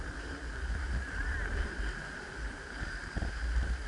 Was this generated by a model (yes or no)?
no